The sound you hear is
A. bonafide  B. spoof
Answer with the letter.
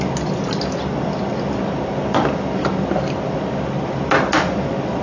A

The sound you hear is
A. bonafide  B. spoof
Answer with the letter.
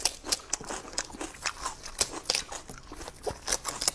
A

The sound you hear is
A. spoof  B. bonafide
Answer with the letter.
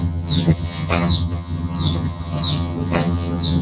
A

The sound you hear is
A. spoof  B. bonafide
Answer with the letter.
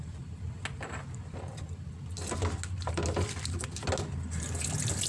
B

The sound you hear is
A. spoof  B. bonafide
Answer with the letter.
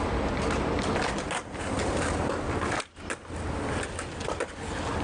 B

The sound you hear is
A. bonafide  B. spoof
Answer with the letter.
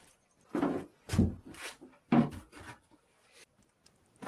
A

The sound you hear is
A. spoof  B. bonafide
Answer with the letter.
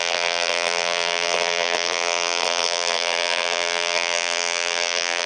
A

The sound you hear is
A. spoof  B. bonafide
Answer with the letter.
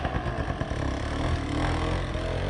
B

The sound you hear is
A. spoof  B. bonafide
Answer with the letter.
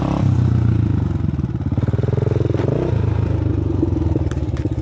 B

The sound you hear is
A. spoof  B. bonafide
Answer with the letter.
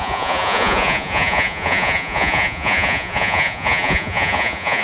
A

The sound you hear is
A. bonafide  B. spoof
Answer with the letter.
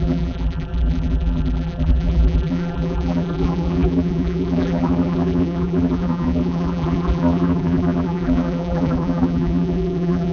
B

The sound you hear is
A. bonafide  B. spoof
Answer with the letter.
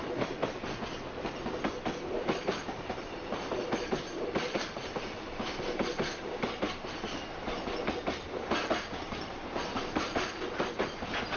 A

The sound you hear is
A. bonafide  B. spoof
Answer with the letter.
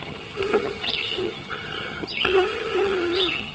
B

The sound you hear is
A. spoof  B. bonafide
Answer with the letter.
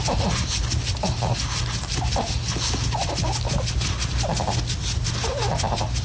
B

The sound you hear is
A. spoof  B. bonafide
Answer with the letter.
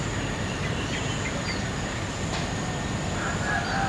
B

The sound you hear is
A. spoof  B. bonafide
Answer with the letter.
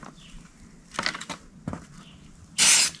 B